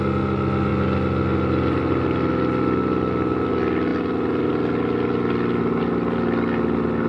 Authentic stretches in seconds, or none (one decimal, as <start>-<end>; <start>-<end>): 0.0-7.1